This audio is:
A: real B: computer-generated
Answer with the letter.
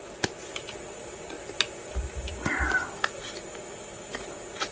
A